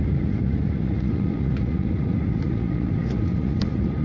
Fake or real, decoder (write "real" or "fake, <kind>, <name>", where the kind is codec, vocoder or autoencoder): fake, vocoder, Vocos